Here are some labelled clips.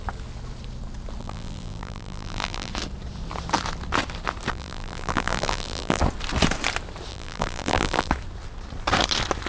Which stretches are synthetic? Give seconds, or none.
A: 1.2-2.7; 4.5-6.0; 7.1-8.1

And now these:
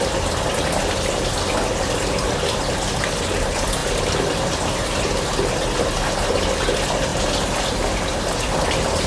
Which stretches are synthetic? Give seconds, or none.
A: none

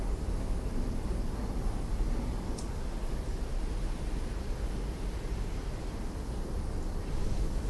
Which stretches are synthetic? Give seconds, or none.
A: none

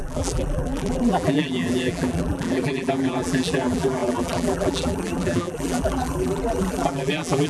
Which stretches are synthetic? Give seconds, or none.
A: 0.0-7.5

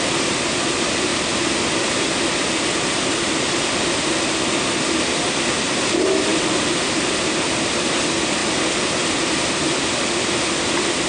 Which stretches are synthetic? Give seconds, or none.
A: 0.0-1.1; 4.9-6.3; 7.6-8.4; 9.2-11.1

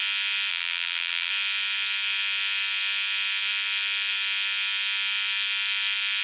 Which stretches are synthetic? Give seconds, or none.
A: 0.5-1.3

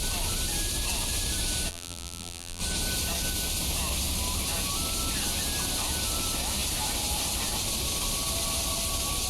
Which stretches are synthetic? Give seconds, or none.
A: 1.7-2.6

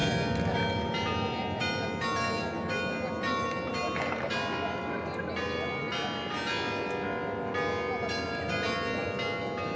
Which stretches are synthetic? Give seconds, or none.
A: none